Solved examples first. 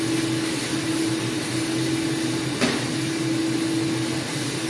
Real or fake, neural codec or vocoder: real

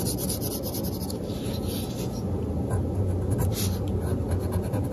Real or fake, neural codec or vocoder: real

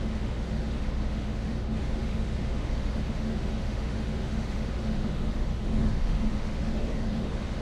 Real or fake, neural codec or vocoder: fake, autoencoder, DAC-VAE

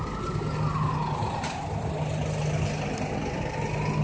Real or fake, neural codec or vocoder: real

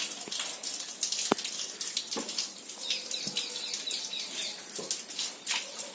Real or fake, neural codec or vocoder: real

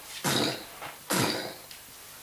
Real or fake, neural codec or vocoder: real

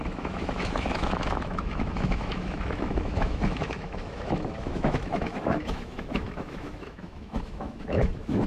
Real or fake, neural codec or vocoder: fake, autoencoder, DAC-VAE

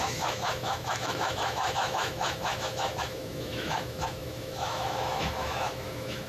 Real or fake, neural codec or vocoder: fake, autoencoder, DAC-VAE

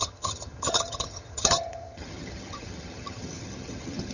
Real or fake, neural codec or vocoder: fake, vocoder, HiFi-GAN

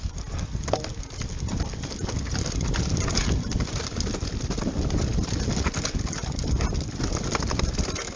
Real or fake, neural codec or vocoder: real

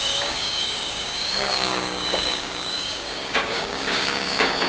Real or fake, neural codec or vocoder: fake, codec, DAC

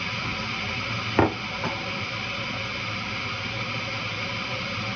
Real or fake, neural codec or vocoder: real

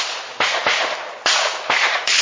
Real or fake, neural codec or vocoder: real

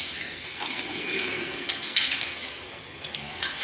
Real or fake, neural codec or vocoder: fake, codec, SNAC